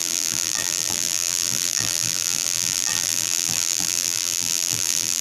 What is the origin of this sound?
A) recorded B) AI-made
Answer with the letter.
B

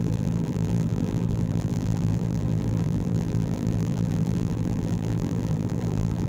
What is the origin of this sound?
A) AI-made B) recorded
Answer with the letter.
A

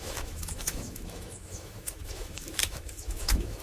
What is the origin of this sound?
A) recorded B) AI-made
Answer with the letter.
B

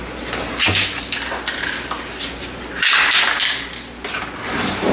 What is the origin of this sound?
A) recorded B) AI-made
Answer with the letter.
A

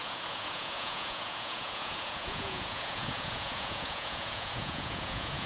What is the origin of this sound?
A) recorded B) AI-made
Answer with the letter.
B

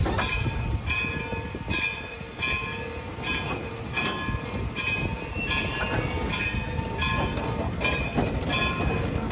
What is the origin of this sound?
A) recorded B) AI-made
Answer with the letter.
A